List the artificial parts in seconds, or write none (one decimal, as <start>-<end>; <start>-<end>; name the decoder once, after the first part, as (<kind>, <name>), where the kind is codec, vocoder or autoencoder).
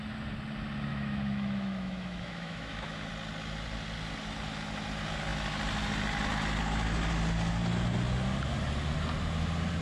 0.9-3.1 (autoencoder, DAC-VAE)